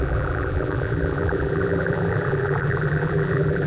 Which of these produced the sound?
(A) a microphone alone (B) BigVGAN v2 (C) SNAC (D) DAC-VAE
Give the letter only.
B